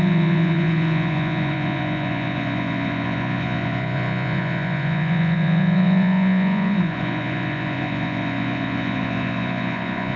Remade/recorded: remade